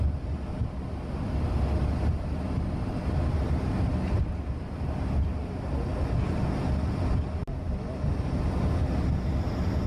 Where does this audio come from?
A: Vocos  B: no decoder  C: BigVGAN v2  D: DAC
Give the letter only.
B